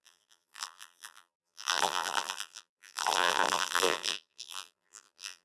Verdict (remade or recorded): remade